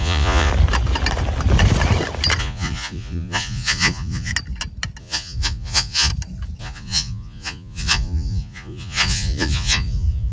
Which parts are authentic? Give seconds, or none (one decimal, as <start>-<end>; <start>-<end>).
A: 0.5-2.4; 4.3-5.0; 6.1-6.6